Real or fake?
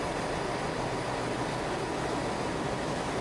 real